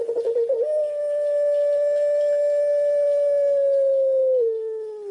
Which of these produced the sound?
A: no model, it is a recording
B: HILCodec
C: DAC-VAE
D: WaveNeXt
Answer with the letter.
A